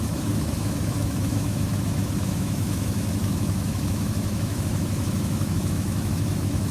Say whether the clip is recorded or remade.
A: remade